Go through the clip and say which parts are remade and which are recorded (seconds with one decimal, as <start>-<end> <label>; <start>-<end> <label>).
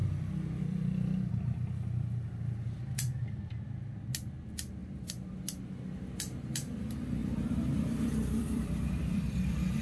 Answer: 0.0-4.8 recorded; 4.8-5.4 remade; 5.4-7.2 recorded; 7.2-9.8 remade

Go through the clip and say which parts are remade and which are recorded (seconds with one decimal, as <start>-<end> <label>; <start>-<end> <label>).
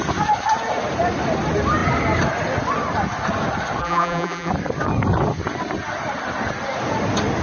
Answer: 0.0-3.8 recorded; 3.8-4.5 remade; 4.5-7.4 recorded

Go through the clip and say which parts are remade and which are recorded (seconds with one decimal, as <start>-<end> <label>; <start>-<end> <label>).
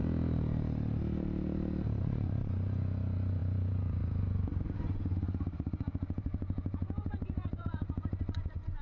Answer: 0.0-2.0 recorded; 2.0-8.8 remade